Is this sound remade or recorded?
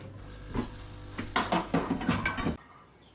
recorded